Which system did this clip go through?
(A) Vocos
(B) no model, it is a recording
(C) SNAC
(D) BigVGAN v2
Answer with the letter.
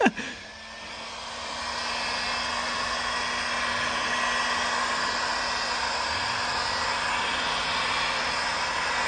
B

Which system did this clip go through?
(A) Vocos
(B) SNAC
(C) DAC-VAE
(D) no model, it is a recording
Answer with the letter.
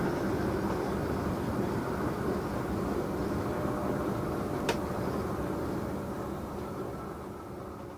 D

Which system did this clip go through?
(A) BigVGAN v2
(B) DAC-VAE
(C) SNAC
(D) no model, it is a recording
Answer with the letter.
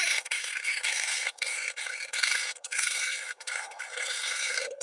C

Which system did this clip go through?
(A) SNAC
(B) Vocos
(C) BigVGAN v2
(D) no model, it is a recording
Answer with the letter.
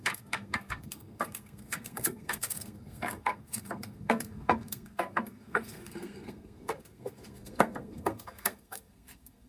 A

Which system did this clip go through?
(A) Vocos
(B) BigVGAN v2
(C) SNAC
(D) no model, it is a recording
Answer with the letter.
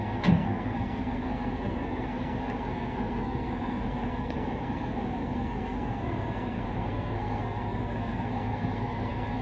C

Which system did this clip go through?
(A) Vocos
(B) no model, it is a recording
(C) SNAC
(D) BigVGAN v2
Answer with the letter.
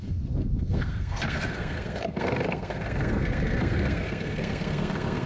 C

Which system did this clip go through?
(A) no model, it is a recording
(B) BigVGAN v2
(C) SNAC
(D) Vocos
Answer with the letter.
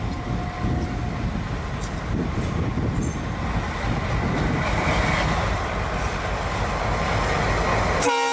A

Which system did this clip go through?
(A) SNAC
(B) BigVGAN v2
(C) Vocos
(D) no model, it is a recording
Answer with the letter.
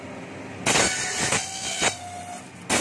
D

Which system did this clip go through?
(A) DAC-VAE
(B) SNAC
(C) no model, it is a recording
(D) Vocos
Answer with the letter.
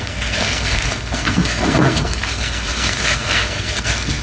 B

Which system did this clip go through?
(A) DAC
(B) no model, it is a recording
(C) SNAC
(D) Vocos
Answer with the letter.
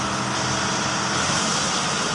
B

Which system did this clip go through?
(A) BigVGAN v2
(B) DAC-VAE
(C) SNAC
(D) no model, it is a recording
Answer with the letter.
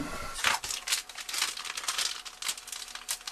D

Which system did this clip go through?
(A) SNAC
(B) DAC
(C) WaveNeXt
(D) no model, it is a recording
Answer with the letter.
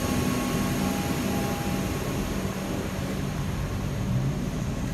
D